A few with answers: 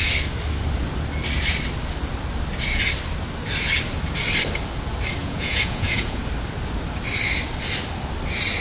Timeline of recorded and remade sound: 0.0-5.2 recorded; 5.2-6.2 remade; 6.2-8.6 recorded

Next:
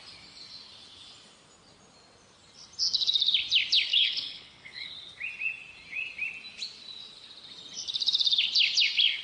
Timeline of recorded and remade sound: 0.0-3.9 recorded; 3.9-4.9 remade; 4.9-9.2 recorded

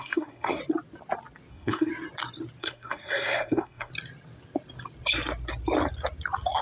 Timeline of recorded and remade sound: 0.0-0.6 remade; 0.6-1.5 recorded; 1.5-1.9 remade; 1.9-2.6 recorded; 2.6-3.9 remade; 3.9-6.6 recorded

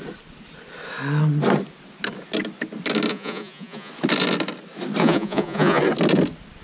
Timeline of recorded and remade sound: 0.0-3.1 recorded; 3.1-3.9 remade; 3.9-5.0 recorded; 5.0-5.8 remade; 5.8-6.6 recorded